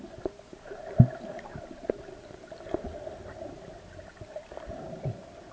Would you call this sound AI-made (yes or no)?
no